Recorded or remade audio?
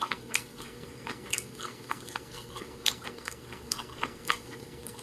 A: remade